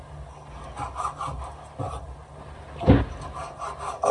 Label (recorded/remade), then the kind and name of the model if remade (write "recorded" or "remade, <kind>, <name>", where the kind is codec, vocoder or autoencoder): recorded